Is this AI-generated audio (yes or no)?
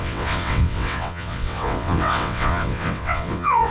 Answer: yes